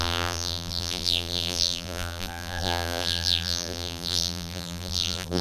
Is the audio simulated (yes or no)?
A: yes